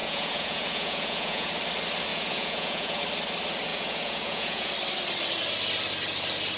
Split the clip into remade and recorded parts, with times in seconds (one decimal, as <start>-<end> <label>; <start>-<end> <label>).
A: 0.0-1.5 remade; 1.5-2.1 recorded; 2.1-3.0 remade; 3.0-3.7 recorded; 3.7-4.7 remade; 4.7-6.6 recorded